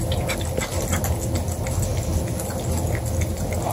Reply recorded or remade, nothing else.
recorded